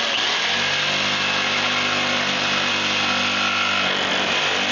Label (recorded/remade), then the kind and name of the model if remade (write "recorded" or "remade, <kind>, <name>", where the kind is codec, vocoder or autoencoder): recorded